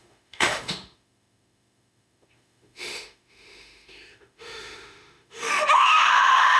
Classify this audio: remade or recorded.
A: remade